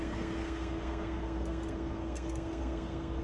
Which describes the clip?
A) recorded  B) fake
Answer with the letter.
B